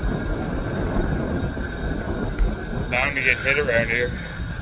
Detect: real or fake real